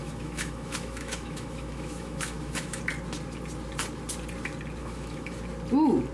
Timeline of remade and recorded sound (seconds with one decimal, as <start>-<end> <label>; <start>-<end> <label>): 0.0-2.8 remade; 2.8-4.8 recorded; 4.8-5.4 remade; 5.4-6.1 recorded